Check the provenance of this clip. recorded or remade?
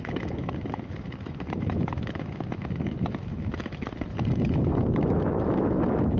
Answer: remade